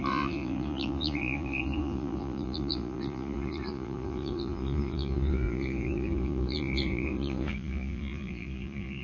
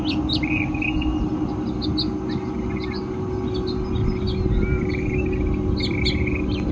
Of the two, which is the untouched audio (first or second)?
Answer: second